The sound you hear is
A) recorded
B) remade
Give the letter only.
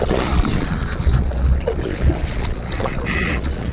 B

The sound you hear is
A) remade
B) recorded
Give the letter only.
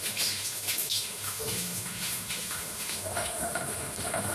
A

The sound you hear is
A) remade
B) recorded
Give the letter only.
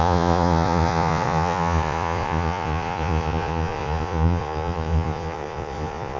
A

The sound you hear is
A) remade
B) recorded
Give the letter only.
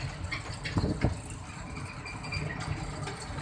B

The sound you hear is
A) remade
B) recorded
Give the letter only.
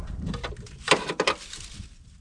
B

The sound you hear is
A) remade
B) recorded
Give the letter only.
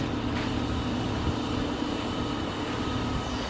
B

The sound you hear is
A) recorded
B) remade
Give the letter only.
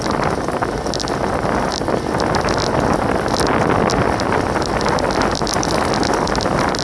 A